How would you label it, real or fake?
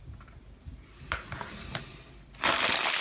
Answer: fake